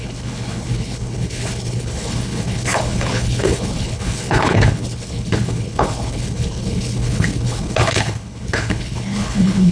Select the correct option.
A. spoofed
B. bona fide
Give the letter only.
A